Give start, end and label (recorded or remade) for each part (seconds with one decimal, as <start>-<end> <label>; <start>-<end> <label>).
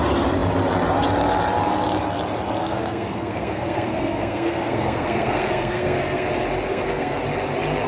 0.0-2.6 recorded; 2.6-6.3 remade; 6.3-6.7 recorded; 6.7-7.2 remade; 7.2-7.9 recorded